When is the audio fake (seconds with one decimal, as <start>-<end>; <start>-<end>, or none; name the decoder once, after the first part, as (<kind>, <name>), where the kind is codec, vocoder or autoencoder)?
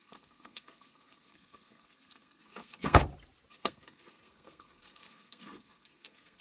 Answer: 0.0-3.0 (codec, SNAC); 3.5-6.4